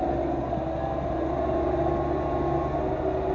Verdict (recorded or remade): recorded